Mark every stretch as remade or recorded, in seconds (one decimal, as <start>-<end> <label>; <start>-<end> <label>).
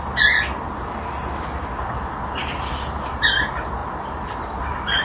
0.0-5.0 recorded